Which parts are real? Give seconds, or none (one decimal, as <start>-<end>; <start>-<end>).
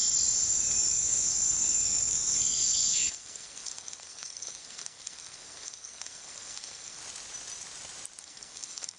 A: 0.0-0.9; 7.0-8.2